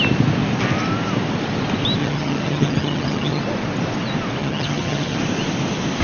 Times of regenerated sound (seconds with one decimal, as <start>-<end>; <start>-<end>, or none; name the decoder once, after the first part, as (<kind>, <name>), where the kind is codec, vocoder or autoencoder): 2.0-3.4 (vocoder, HiFi-GAN); 4.4-5.2